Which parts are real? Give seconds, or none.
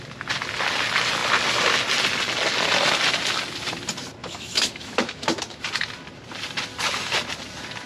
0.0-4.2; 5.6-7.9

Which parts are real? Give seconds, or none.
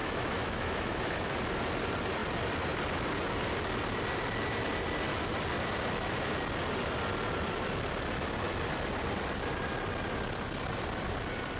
1.2-11.6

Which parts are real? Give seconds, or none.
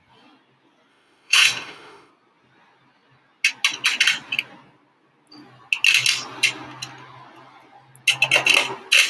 0.0-0.9; 2.1-9.1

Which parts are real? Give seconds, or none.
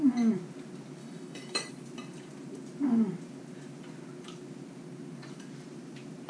0.0-1.0; 1.7-6.3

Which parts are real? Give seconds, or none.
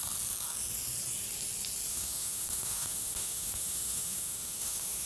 0.0-1.9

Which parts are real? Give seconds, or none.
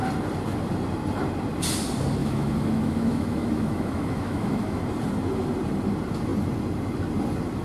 0.0-2.2; 4.8-7.6